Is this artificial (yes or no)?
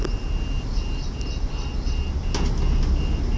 no